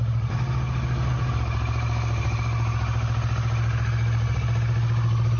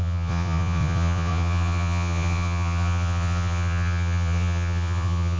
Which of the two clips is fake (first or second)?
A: second